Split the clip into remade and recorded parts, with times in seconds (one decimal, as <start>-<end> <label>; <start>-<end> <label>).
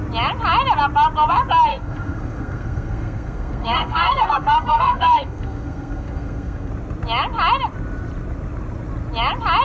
0.0-1.7 recorded; 1.7-6.7 remade; 6.7-9.6 recorded